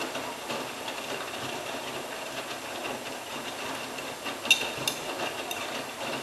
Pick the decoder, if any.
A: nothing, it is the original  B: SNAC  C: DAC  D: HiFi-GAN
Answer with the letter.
A